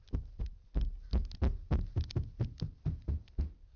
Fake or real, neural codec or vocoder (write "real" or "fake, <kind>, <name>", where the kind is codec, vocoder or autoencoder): real